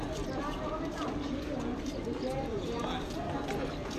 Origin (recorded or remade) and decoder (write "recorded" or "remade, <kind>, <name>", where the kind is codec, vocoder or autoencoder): recorded